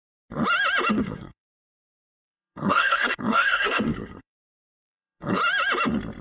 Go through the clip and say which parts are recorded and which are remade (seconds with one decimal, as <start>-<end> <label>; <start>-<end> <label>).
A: 0.0-0.9 recorded; 0.9-5.4 remade; 5.4-6.2 recorded